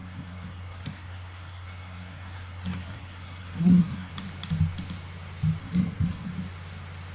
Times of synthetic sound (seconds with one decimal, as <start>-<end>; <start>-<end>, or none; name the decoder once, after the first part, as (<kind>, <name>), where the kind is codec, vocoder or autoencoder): 0.0-4.1 (codec, SNAC); 5.6-6.3